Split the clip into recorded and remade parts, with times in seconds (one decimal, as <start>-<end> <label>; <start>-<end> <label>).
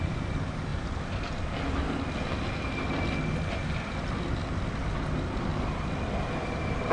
0.0-6.9 recorded